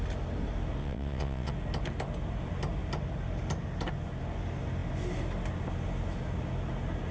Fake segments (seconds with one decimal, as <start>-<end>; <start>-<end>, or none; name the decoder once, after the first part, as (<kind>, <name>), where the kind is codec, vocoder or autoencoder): 0.8-1.5 (vocoder, WaveNeXt)

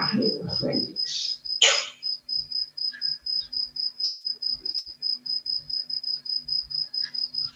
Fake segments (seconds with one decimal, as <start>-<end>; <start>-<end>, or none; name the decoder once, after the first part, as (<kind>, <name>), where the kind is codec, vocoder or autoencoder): none

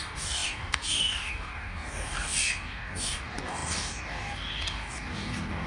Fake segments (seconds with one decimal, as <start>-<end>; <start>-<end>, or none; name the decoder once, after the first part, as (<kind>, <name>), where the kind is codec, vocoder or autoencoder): 0.0-5.7 (codec, DAC)

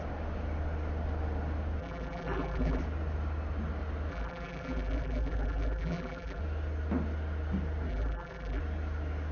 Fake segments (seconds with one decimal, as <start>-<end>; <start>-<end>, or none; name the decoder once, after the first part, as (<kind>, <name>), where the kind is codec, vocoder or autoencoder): 1.8-2.8 (vocoder, BigVGAN v2); 4.1-6.4; 7.9-8.6

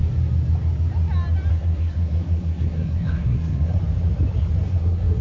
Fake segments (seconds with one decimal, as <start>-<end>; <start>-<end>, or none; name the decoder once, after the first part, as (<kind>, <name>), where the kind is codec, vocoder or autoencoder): 1.5-3.8 (codec, SNAC); 4.6-5.2

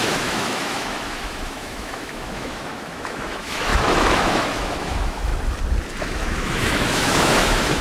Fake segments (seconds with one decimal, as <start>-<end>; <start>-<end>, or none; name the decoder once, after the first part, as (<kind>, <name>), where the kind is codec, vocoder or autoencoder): 0.0-5.3 (autoencoder, DAC-VAE); 6.0-7.8